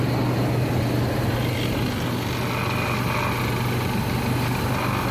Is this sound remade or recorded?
recorded